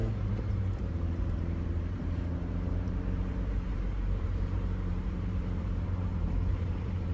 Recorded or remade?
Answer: remade